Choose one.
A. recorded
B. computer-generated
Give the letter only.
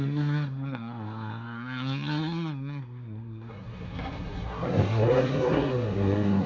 B